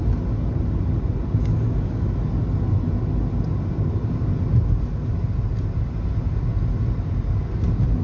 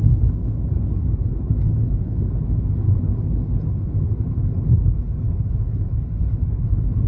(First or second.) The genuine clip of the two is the first